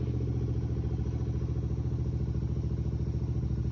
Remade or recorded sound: recorded